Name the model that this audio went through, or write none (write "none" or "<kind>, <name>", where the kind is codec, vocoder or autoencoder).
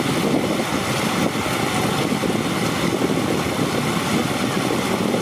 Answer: none